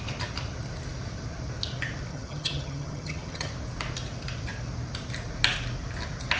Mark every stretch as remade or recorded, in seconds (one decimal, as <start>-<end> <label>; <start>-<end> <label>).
0.0-2.1 recorded; 2.1-3.5 remade; 3.5-6.4 recorded